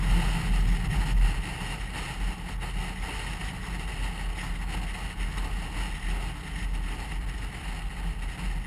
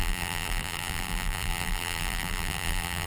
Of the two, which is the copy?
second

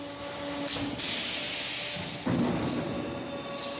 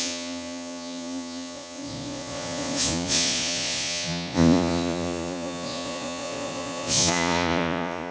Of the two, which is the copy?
second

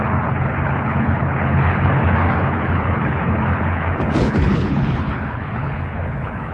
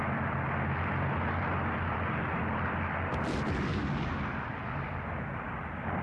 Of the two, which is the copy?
first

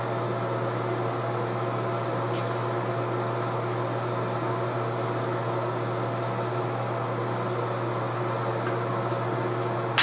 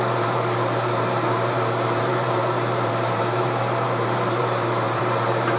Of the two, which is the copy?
second